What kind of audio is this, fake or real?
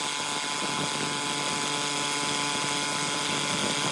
real